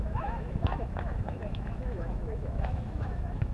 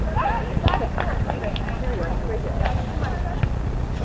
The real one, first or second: second